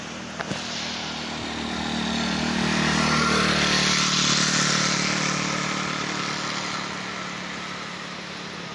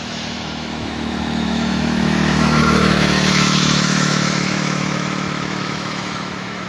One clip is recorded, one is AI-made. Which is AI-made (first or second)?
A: second